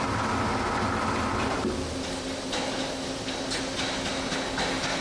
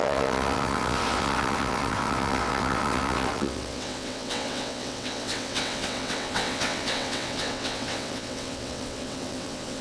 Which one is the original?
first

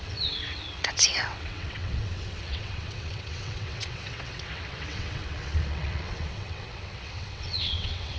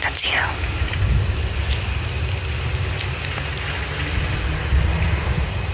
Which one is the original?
second